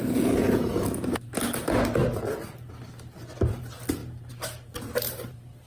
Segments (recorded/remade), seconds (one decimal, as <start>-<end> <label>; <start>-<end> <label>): 0.0-0.8 remade; 0.8-5.7 recorded